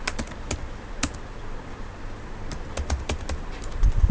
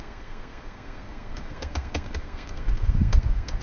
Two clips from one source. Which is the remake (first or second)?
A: second